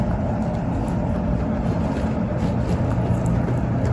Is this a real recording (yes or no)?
yes